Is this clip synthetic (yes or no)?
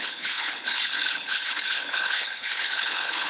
yes